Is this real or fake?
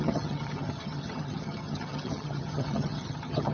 fake